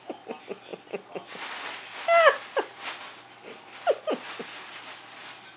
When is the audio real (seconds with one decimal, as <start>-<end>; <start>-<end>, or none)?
0.0-5.6